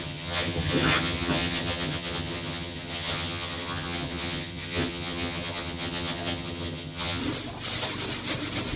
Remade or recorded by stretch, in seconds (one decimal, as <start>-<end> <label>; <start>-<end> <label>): 0.0-7.2 remade; 7.2-8.8 recorded